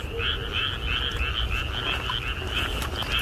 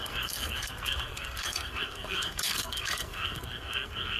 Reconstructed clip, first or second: second